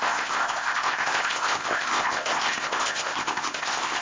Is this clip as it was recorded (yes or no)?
no